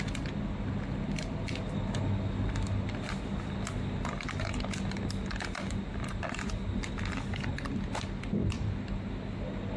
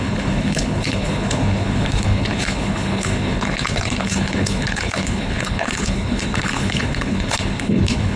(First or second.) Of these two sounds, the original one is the first